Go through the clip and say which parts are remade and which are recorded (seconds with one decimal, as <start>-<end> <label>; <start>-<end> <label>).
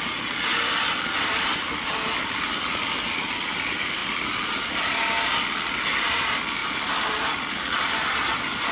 0.0-4.0 remade; 4.0-6.1 recorded; 6.1-8.7 remade